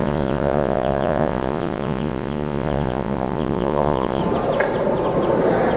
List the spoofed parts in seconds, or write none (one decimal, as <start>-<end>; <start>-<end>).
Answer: 0.0-4.2